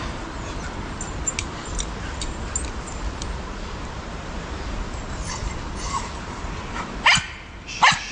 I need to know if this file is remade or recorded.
recorded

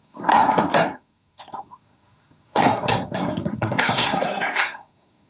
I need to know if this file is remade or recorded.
remade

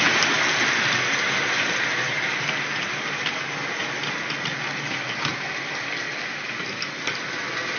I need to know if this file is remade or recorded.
recorded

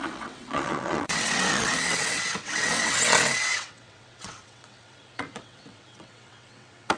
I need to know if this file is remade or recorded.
remade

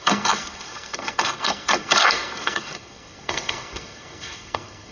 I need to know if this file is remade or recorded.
remade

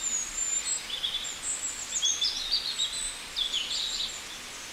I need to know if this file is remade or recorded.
recorded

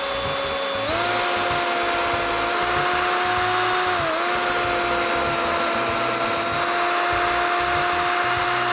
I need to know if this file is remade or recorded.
recorded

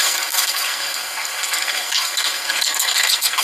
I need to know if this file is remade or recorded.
remade